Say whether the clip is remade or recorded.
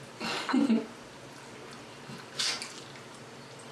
recorded